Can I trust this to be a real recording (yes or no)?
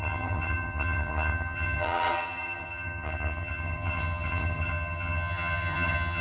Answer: no